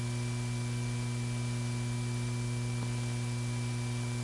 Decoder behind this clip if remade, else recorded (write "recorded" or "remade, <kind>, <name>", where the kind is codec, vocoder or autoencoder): recorded